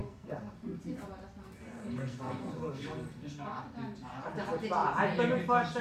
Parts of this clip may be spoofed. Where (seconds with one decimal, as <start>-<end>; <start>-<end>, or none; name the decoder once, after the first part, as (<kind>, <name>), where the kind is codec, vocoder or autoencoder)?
0.0-0.8 (codec, SNAC); 1.4-3.6